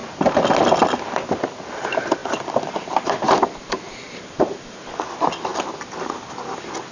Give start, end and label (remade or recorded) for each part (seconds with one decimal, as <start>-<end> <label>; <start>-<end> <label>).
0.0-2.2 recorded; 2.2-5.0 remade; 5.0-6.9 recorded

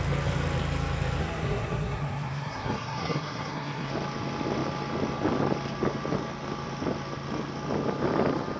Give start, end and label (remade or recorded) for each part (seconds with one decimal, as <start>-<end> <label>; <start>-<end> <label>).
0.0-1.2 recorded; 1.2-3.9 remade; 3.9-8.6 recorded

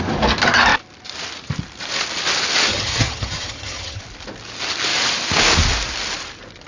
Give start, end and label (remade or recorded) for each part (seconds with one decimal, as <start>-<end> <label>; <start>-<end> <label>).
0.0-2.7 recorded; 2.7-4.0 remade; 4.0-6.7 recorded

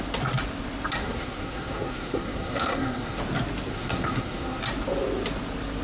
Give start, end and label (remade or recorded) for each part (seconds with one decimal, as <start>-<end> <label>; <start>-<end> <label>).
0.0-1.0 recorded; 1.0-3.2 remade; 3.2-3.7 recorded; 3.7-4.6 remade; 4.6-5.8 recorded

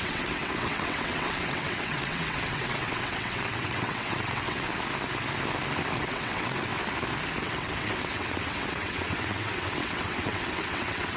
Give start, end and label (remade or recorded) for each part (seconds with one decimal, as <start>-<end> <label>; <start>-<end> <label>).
0.0-4.7 remade; 4.7-6.0 recorded; 6.0-6.7 remade; 6.7-7.4 recorded; 7.4-11.2 remade

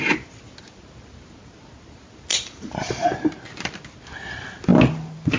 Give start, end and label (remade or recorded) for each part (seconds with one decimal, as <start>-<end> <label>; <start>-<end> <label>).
0.0-2.3 recorded; 2.3-3.3 remade; 3.3-5.4 recorded

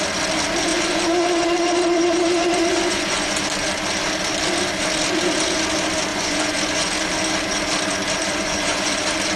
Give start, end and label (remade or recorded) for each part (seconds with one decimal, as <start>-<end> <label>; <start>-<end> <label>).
0.0-0.7 recorded; 0.7-3.4 remade; 3.4-6.1 recorded; 6.1-7.0 remade; 7.0-8.2 recorded; 8.2-9.0 remade; 9.0-9.4 recorded

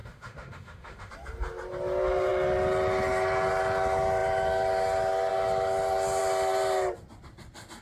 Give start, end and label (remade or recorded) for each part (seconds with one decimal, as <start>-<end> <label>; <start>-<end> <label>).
0.0-1.1 remade; 1.1-7.8 recorded